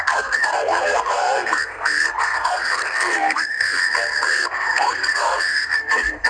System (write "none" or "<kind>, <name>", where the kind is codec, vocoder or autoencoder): codec, SNAC